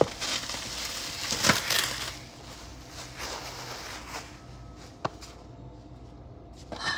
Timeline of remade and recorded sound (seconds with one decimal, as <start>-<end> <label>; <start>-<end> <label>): 0.0-7.0 recorded